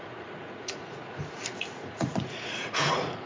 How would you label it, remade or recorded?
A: remade